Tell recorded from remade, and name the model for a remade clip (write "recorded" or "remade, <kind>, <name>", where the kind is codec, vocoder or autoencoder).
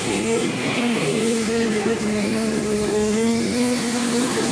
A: remade, codec, SNAC